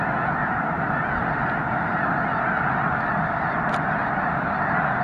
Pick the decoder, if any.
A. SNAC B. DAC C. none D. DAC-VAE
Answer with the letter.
C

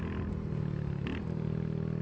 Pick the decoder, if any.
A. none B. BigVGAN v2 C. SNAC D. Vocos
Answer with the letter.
A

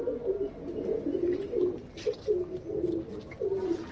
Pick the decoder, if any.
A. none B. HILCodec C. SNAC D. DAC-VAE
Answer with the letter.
A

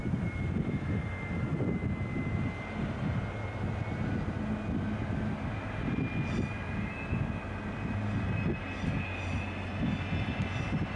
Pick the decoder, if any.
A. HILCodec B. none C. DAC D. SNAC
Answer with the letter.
B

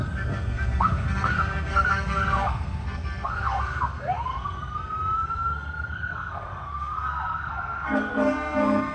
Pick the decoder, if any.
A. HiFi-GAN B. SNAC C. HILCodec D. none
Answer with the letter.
B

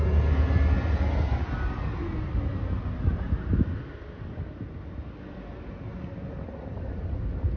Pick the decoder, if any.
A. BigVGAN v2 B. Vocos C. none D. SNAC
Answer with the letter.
C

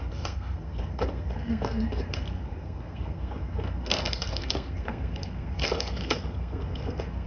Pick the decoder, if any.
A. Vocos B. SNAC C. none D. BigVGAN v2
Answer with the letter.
B